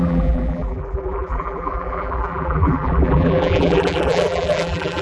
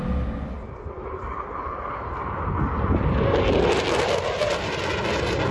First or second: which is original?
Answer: second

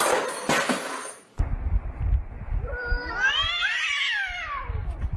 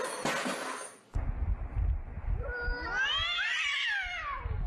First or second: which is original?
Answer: second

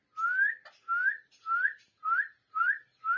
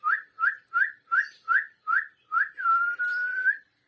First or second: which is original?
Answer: first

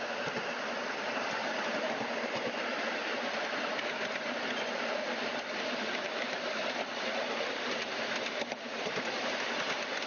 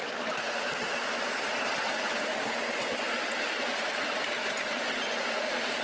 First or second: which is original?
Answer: second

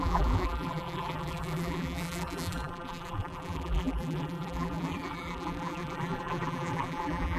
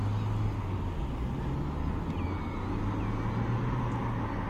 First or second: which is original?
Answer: second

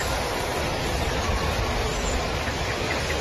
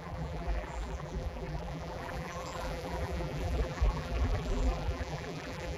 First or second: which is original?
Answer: first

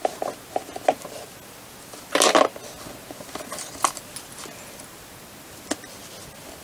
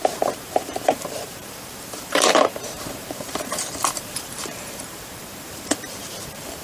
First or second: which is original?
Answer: first